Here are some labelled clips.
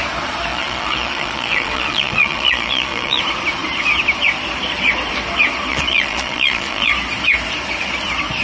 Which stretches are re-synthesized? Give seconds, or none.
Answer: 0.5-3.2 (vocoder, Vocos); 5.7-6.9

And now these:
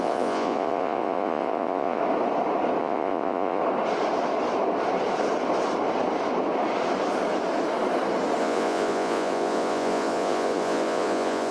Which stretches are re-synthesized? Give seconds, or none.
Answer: 0.0-2.0 (vocoder, Vocos); 2.8-3.6; 8.4-11.5

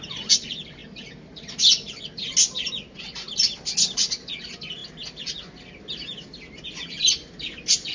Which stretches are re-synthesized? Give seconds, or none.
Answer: none

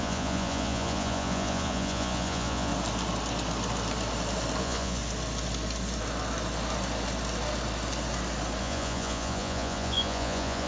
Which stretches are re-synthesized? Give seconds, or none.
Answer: 0.0-2.7 (vocoder, Vocos); 4.6-5.0; 8.6-10.7

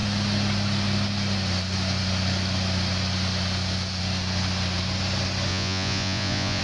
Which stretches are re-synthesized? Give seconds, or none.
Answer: 5.5-6.6 (vocoder, Vocos)

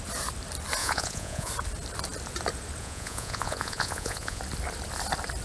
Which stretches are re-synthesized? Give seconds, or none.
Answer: 0.8-1.5 (vocoder, Vocos); 2.8-4.4